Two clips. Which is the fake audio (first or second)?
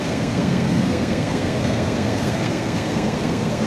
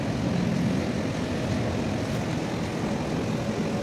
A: first